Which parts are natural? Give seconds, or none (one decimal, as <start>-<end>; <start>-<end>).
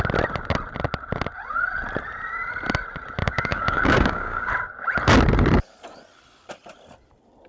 0.0-3.2; 4.5-7.5